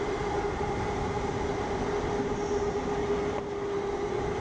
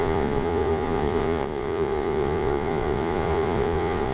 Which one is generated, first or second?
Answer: second